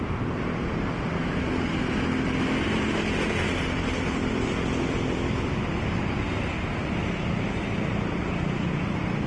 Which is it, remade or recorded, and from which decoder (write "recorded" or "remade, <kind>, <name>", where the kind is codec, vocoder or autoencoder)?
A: recorded